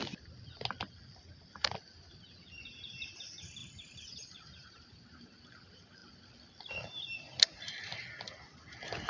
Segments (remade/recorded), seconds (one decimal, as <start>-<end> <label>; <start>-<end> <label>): 0.0-3.6 recorded; 3.6-5.4 remade; 5.4-9.1 recorded